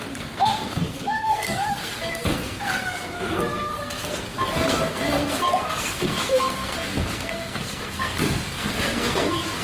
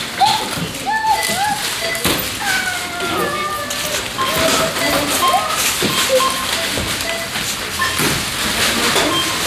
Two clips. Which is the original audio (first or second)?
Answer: second